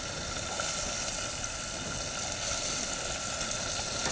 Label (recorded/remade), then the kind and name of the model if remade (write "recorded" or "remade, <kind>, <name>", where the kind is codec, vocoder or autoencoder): recorded